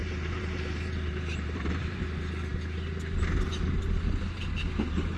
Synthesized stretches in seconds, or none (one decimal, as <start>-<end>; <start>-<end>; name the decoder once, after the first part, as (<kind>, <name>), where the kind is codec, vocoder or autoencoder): 0.0-2.0 (vocoder, BigVGAN v2)